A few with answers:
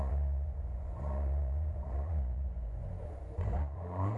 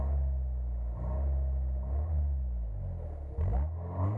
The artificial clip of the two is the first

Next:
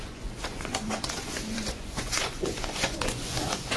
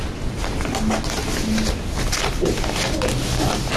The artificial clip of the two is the first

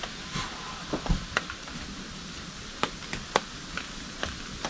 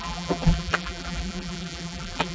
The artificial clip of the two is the second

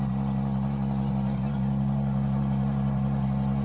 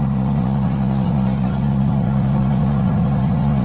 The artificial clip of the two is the second